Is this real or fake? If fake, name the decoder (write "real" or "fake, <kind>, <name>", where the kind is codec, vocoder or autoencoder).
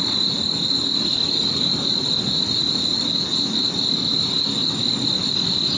real